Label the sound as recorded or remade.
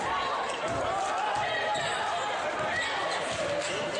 recorded